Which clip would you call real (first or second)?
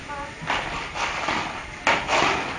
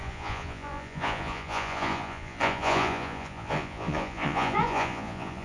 first